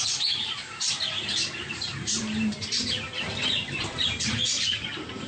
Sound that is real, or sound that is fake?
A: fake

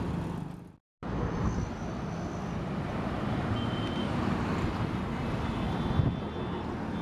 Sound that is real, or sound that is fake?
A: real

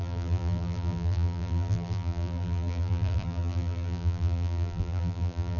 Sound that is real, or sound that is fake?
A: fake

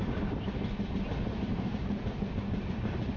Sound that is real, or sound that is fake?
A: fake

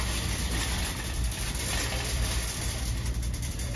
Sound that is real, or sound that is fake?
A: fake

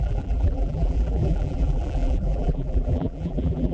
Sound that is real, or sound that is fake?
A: fake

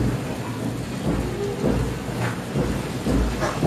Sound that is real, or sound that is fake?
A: real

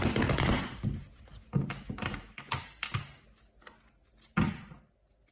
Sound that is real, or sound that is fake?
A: real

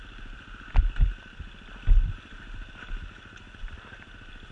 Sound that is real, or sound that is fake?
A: real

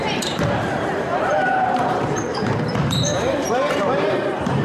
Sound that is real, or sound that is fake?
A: fake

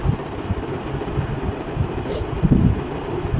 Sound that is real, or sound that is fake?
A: fake